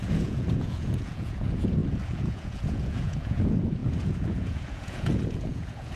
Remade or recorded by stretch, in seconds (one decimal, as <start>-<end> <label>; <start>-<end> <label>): 0.0-6.0 remade